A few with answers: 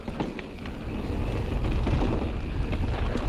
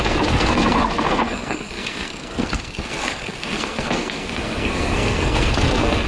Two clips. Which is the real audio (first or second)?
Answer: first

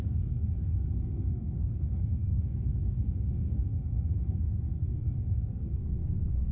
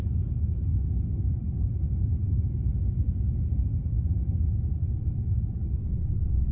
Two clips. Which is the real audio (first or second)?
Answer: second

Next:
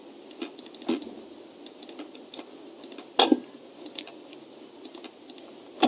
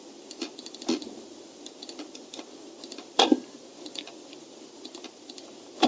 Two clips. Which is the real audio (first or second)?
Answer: first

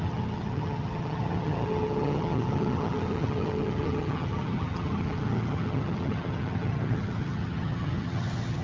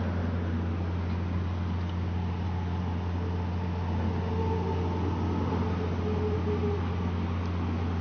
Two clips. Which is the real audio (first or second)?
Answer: second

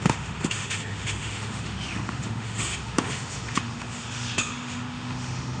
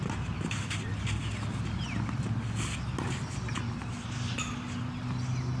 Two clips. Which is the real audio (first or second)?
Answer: second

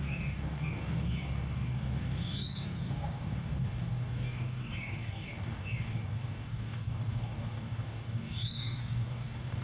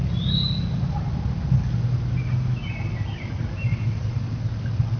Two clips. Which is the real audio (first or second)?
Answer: second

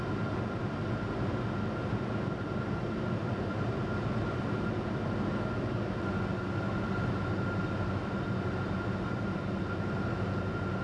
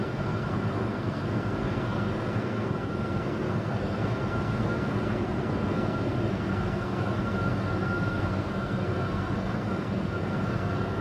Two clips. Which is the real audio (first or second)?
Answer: first